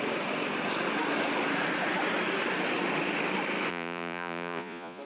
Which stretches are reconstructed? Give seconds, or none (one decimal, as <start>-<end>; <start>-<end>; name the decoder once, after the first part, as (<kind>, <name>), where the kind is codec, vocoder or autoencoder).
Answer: 3.7-5.0 (vocoder, Vocos)